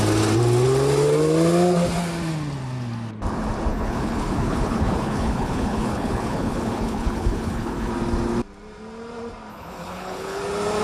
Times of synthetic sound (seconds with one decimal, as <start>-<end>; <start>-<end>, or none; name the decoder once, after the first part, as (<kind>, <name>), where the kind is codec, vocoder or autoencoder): 3.7-7.9 (codec, HILCodec); 9.5-10.4